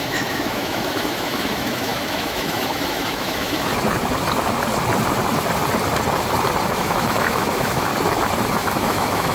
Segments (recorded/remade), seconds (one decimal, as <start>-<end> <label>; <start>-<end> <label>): 0.0-3.7 remade; 3.7-6.7 recorded; 6.7-7.9 remade; 7.9-8.5 recorded; 8.5-9.3 remade